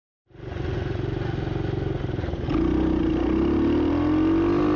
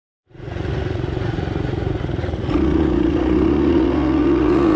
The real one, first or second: first